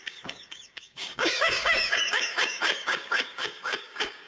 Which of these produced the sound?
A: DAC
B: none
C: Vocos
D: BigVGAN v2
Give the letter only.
A